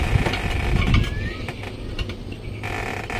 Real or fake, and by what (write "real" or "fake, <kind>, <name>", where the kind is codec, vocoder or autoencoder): real